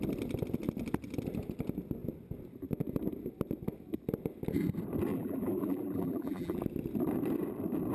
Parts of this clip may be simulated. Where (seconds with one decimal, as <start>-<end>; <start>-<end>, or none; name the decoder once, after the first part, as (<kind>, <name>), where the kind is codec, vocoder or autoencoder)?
5.1-6.6 (vocoder, BigVGAN v2)